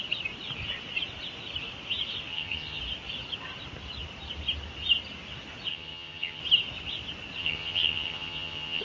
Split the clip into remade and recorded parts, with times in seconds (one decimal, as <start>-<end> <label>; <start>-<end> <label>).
0.0-2.3 recorded; 2.3-2.8 remade; 2.8-5.7 recorded; 5.7-6.4 remade; 6.4-7.4 recorded; 7.4-8.8 remade